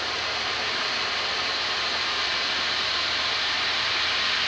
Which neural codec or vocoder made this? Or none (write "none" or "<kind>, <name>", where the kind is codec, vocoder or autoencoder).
vocoder, BigVGAN v2